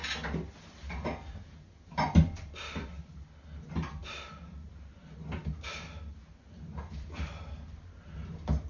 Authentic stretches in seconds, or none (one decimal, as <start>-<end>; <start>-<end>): 0.0-8.7